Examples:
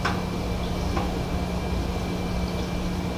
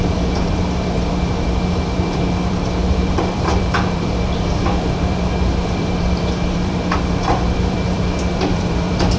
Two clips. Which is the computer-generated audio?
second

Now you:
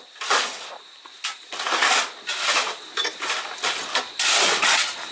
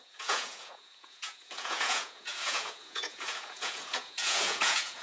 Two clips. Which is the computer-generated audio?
second